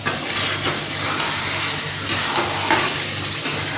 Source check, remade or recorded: recorded